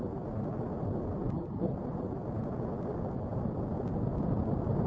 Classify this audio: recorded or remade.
recorded